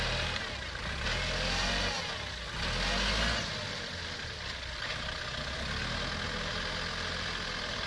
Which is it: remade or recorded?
recorded